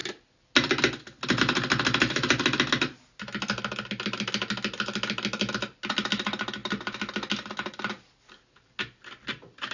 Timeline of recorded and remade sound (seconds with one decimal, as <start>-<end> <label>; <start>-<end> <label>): 0.0-9.7 recorded